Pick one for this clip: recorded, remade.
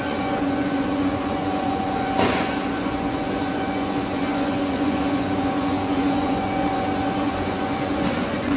remade